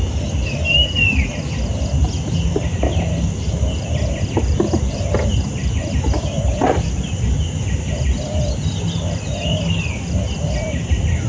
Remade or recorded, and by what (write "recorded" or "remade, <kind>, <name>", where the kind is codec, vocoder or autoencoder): recorded